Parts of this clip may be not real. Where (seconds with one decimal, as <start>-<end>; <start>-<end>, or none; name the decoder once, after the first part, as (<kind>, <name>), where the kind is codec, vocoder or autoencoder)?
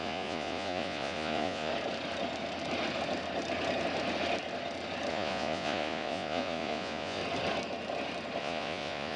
0.0-1.7 (vocoder, Vocos); 5.1-7.2; 8.4-9.2